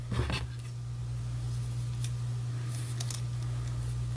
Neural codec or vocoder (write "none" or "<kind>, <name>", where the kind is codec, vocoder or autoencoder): none